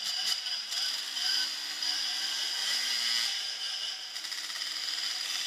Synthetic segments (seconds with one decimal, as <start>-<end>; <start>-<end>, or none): none